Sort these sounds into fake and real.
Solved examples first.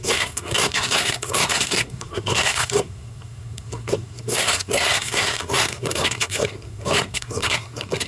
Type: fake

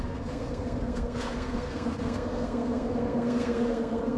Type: fake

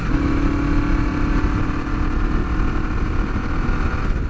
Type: real